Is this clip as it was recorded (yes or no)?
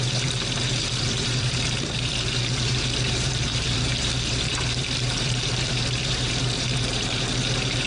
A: no